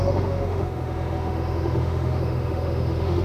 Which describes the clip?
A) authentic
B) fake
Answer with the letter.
B